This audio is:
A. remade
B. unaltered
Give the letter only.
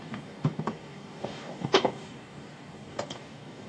A